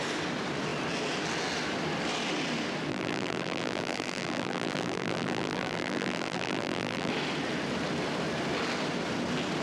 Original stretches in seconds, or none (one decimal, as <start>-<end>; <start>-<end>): 0.0-2.9; 7.1-9.6